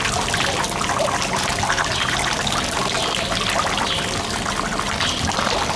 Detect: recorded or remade recorded